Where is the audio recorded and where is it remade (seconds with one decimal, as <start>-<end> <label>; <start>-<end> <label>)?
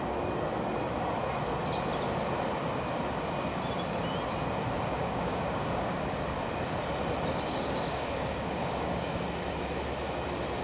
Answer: 0.0-4.9 recorded; 4.9-6.0 remade; 6.0-7.5 recorded; 7.5-9.2 remade; 9.2-10.6 recorded